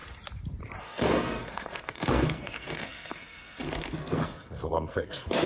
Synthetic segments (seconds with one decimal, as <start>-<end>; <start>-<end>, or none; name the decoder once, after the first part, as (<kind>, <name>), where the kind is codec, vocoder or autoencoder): 0.8-5.5 (codec, SNAC)